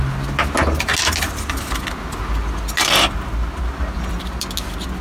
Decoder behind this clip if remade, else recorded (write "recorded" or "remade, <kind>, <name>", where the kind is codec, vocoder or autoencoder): recorded